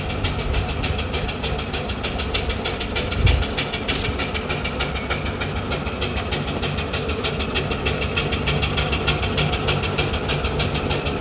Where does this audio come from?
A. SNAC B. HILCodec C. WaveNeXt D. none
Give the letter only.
D